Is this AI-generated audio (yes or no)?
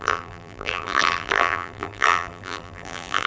yes